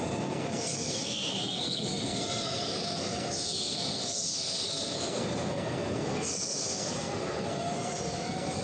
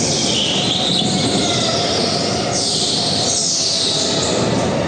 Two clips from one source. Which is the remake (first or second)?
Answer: first